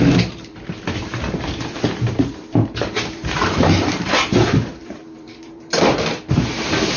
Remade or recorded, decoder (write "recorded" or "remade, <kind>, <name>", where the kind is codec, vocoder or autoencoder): remade, vocoder, BigVGAN v2